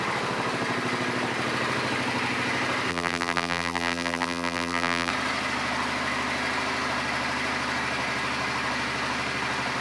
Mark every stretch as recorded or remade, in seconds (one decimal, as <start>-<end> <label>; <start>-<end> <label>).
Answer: 0.0-2.9 recorded; 2.9-5.1 remade; 5.1-9.8 recorded